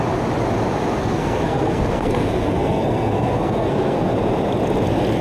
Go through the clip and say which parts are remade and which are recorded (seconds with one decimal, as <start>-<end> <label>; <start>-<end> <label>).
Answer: 0.0-1.0 recorded; 1.0-4.1 remade; 4.1-5.2 recorded